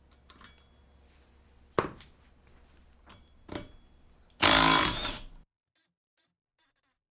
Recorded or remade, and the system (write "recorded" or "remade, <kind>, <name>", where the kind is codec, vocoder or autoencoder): recorded